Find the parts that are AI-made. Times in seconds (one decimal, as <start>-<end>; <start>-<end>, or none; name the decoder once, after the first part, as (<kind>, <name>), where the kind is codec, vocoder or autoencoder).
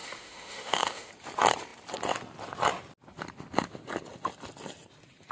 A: 0.0-1.1 (autoencoder, DAC-VAE)